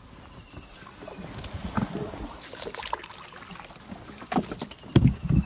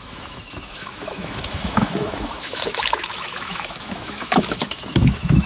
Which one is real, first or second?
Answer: first